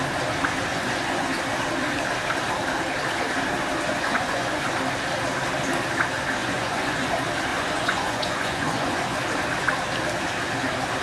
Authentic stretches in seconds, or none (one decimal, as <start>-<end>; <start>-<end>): 0.0-0.7; 1.3-3.9; 4.7-6.4; 7.1-7.5; 9.2-11.0